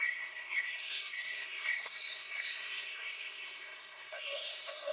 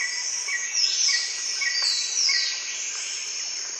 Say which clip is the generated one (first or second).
first